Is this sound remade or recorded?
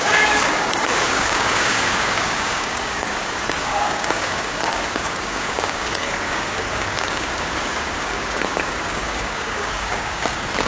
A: remade